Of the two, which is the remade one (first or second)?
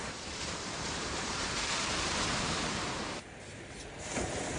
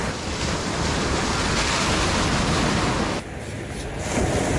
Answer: first